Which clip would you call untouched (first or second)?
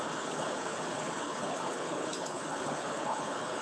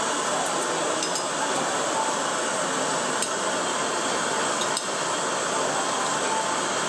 second